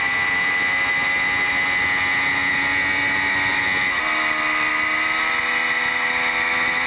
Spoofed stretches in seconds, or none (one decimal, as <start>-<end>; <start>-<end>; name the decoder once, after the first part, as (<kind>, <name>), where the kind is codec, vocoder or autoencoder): none